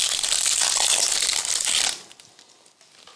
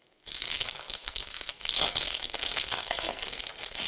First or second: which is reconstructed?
second